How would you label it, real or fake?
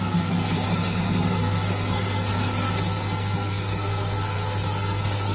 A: fake